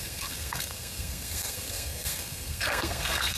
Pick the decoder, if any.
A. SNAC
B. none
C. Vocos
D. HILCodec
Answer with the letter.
A